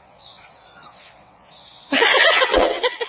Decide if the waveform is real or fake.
fake